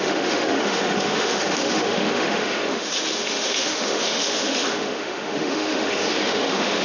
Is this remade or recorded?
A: remade